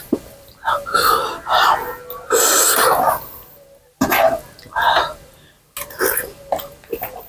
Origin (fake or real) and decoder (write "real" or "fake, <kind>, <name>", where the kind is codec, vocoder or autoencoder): real